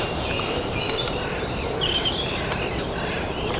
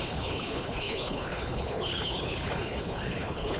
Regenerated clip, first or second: second